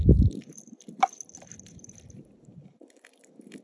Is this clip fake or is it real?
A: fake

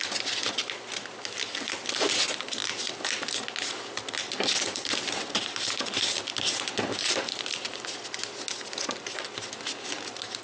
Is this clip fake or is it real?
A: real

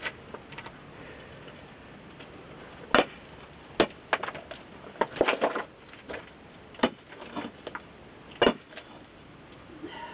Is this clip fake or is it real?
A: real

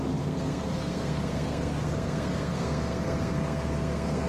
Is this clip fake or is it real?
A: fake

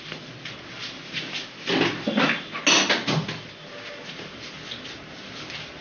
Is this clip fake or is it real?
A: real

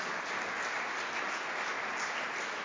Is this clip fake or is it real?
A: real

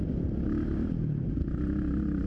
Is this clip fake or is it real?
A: real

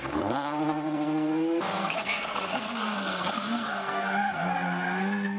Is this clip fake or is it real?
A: fake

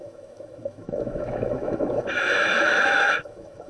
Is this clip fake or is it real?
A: fake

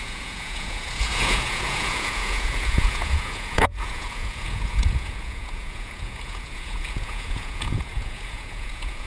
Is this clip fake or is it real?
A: fake